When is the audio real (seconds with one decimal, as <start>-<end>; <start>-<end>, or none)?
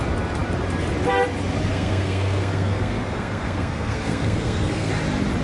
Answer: 0.0-1.7; 4.9-5.4